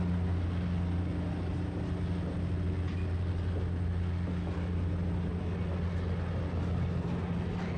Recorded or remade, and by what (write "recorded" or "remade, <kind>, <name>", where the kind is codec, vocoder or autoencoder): recorded